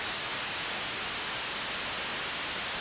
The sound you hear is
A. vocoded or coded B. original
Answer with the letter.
B